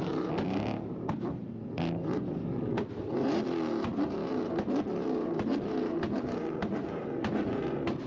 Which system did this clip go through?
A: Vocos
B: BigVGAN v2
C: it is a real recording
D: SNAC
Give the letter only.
C